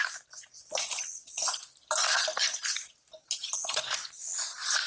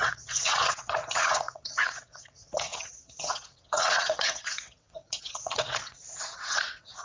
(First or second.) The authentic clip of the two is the first